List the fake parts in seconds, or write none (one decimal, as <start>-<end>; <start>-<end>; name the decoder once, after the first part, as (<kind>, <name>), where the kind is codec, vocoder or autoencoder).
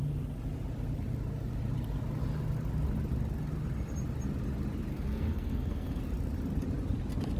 4.9-6.0 (codec, SNAC)